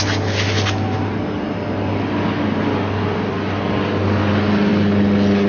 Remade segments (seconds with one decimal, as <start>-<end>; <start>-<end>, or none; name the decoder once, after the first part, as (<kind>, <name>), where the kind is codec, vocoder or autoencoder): none

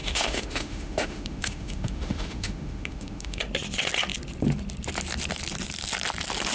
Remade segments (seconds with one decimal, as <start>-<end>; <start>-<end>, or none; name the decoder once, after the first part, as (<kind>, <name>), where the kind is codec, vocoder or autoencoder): 0.0-3.4 (autoencoder, DAC-VAE)

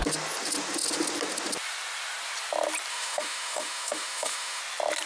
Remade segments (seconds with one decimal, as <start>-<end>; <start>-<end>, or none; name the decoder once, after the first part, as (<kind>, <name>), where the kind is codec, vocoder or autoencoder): 2.9-4.6 (autoencoder, DAC-VAE)

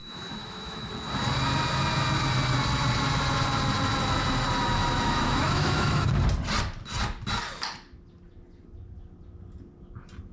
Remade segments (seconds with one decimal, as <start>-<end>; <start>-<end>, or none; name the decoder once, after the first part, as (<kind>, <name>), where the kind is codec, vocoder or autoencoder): 0.0-0.9 (autoencoder, DAC-VAE); 4.8-6.1

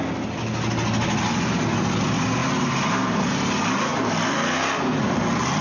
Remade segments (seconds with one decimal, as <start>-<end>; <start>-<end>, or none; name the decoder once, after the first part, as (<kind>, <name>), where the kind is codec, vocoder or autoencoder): none

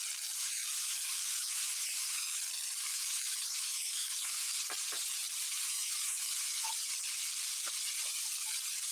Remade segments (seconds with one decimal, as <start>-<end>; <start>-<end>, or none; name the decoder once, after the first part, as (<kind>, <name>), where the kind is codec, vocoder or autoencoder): 0.4-2.4 (autoencoder, DAC-VAE); 2.9-4.6; 5.6-6.7